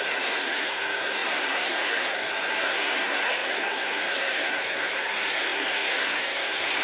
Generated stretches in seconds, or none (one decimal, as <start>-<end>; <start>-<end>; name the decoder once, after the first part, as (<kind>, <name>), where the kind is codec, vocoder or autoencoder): 0.0-6.8 (codec, SNAC)